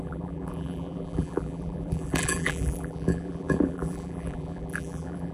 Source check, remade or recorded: remade